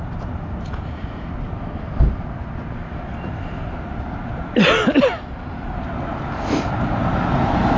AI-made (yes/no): no